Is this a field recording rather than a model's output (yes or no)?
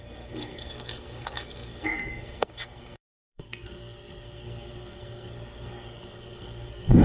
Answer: no